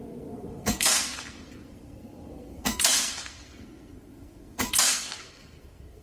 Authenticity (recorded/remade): remade